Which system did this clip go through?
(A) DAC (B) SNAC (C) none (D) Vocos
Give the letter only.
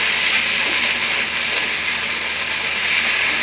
C